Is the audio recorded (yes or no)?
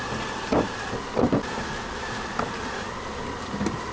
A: yes